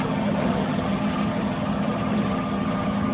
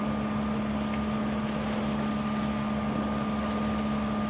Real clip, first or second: second